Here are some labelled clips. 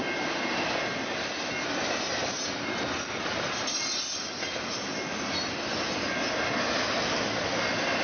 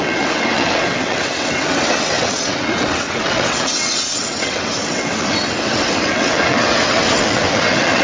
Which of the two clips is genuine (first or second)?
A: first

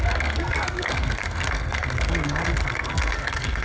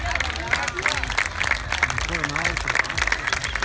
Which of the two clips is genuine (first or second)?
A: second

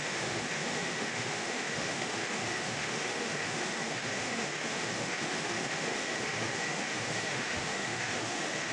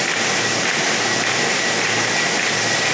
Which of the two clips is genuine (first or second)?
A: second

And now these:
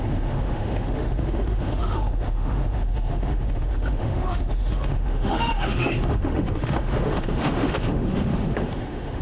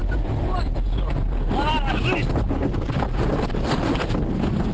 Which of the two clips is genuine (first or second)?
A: second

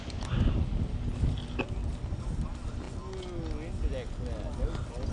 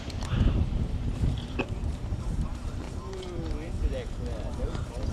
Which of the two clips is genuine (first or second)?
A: first